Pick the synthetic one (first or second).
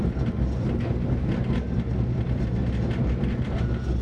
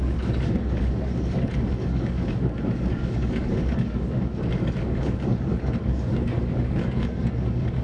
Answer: second